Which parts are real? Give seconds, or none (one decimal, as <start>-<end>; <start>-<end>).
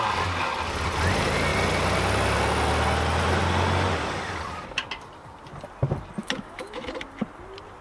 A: 0.0-6.2; 6.9-7.8